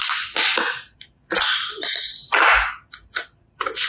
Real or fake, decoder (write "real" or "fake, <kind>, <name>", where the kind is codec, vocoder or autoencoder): real